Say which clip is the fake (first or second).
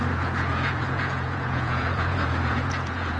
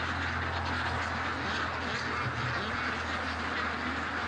first